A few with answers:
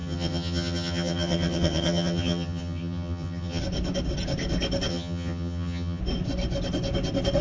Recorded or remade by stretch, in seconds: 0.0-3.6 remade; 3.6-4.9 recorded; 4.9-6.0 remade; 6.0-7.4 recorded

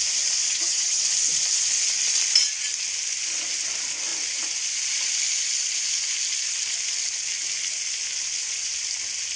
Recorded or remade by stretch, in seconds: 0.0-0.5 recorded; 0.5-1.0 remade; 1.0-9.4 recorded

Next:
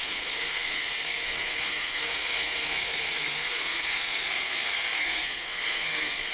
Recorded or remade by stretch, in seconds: 0.0-6.3 remade